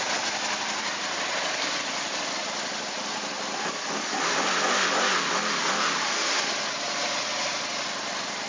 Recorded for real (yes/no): yes